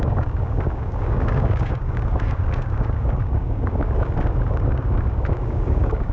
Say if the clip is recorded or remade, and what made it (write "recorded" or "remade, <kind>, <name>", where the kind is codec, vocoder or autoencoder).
remade, codec, DAC